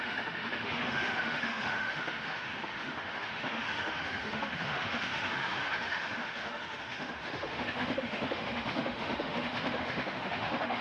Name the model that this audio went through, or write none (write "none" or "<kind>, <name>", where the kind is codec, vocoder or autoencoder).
autoencoder, DAC-VAE